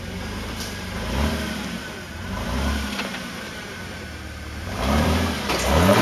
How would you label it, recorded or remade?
remade